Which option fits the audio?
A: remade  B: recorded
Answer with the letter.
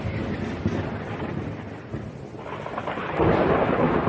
B